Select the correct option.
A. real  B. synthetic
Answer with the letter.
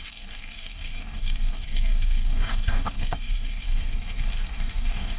B